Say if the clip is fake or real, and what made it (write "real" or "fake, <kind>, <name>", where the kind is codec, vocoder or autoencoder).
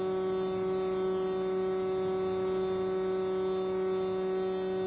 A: real